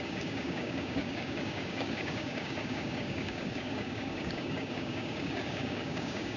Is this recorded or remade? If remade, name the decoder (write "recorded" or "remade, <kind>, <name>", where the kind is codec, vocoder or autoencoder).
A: remade, codec, DAC